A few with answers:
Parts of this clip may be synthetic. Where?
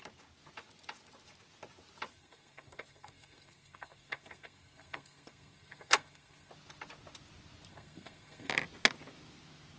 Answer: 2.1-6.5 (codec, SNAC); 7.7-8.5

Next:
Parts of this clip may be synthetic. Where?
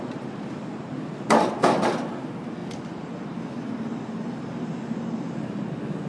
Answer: none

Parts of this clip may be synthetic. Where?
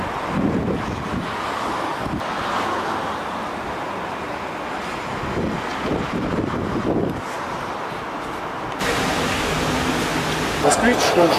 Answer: none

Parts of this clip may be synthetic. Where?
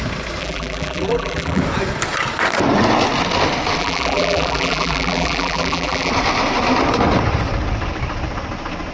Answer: 0.4-1.6 (vocoder, BigVGAN v2); 3.8-6.1